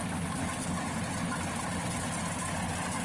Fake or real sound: real